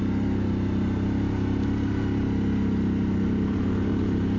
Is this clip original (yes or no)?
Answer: yes